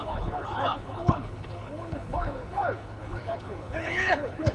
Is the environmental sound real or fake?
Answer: fake